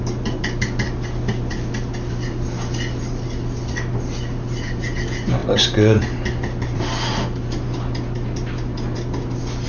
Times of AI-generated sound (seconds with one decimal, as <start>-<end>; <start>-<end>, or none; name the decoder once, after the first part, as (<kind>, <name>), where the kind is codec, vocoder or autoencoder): none